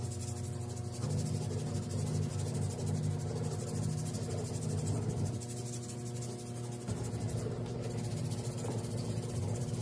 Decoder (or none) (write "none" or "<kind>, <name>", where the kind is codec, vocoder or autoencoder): none